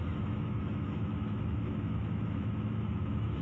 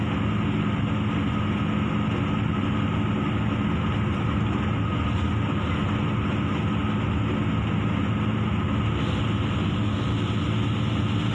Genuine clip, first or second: second